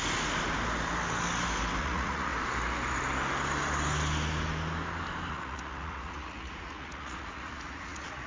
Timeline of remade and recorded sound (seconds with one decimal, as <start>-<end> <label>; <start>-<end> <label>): 0.0-1.8 recorded; 1.8-2.3 remade; 2.3-5.3 recorded; 5.3-8.3 remade